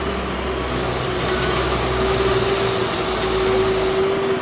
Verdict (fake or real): real